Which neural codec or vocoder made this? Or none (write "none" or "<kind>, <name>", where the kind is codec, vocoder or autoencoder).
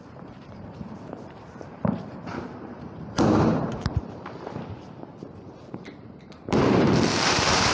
vocoder, BigVGAN v2